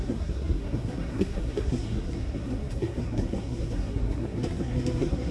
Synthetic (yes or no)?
yes